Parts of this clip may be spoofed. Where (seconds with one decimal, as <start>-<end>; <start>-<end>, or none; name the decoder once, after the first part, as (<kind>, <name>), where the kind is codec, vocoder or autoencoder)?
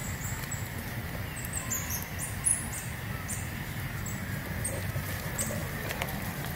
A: 2.5-4.6 (vocoder, BigVGAN v2)